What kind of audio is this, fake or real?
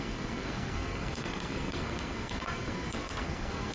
fake